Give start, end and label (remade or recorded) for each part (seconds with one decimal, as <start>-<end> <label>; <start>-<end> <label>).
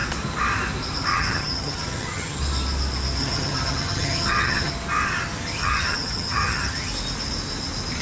0.0-1.1 recorded; 1.1-2.4 remade; 2.4-3.2 recorded; 3.2-4.7 remade; 4.7-5.6 recorded; 5.6-6.9 remade; 6.9-8.0 recorded